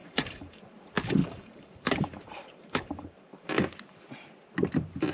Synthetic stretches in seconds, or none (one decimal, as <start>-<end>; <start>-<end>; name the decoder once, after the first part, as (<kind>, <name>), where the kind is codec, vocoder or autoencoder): 0.0-0.6 (vocoder, BigVGAN v2); 1.2-3.7